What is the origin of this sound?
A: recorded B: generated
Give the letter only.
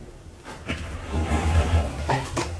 B